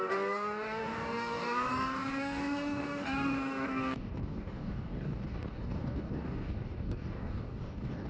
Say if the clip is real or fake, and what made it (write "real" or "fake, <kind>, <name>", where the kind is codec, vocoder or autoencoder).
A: fake, codec, DAC